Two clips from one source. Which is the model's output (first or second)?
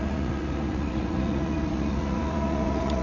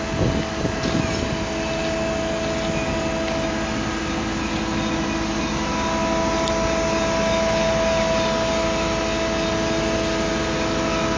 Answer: first